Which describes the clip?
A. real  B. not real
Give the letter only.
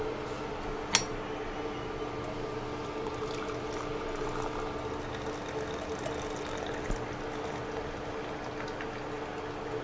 A